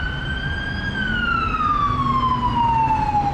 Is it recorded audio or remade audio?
recorded